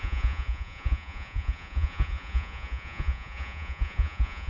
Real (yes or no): no